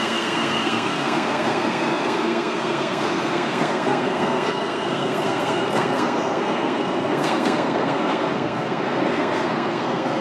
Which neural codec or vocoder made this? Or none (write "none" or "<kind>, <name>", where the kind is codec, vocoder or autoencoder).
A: codec, SNAC